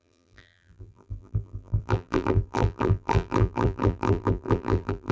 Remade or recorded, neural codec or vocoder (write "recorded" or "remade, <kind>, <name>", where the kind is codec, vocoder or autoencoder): remade, vocoder, BigVGAN v2